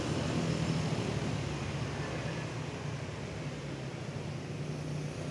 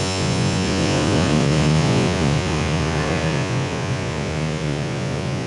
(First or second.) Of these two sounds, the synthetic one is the second